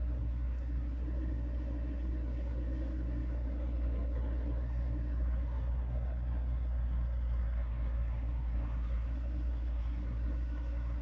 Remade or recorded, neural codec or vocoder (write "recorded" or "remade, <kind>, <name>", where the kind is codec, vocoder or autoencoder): remade, codec, SNAC